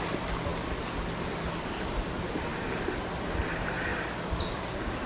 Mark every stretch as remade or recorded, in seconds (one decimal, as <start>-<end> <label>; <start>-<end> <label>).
0.0-5.1 recorded